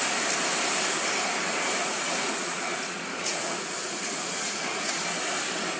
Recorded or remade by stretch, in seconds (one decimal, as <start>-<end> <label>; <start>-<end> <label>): 0.0-1.8 recorded; 1.8-5.0 remade; 5.0-5.8 recorded